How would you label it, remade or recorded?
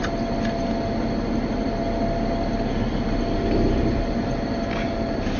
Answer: recorded